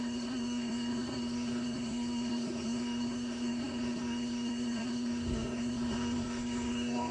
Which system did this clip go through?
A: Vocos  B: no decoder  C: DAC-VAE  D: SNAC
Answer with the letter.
D